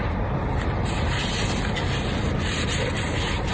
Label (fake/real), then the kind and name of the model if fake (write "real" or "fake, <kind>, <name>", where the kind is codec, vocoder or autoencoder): real